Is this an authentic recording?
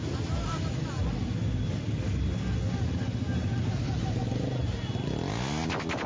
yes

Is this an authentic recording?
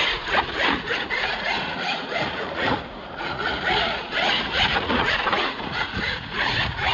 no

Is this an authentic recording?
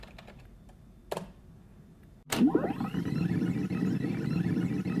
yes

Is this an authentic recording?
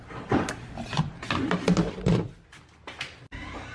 yes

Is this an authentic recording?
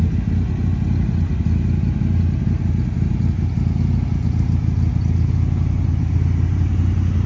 yes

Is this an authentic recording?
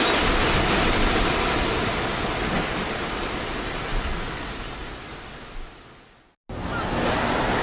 yes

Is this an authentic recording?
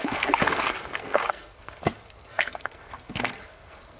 no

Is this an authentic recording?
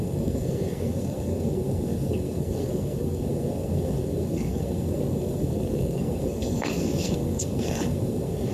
no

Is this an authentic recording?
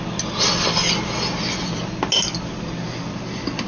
yes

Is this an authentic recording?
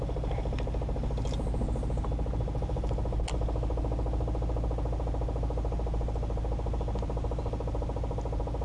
yes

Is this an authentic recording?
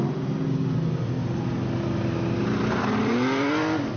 yes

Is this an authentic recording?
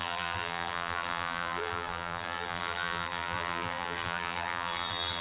no